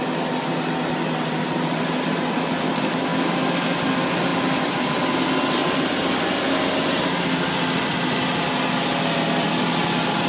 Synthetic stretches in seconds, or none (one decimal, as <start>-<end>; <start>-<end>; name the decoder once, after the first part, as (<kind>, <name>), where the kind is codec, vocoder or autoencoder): none